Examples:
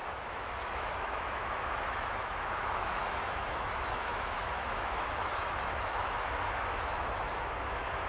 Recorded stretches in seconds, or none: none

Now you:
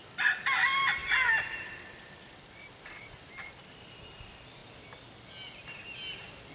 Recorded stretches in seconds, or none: 0.0-6.5

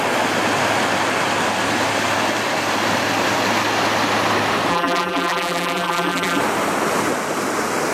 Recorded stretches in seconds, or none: 0.0-4.7; 6.4-7.9